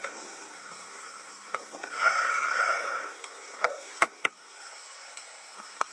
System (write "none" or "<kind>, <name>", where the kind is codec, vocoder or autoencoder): codec, SNAC